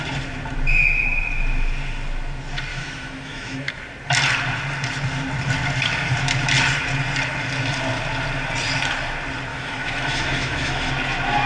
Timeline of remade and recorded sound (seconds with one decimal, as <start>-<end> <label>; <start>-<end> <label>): 0.0-2.7 recorded; 2.7-3.7 remade; 3.7-9.5 recorded; 9.5-10.9 remade; 10.9-11.5 recorded